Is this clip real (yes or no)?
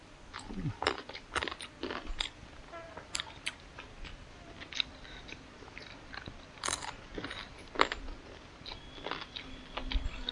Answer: yes